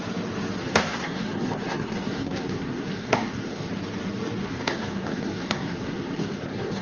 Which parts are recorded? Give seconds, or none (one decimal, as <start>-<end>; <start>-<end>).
0.0-0.6; 3.7-4.4